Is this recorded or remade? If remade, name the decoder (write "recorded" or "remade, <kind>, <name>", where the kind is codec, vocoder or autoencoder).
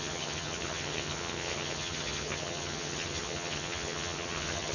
remade, vocoder, HiFi-GAN